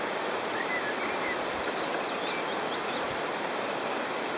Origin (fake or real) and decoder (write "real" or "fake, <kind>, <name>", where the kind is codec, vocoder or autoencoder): real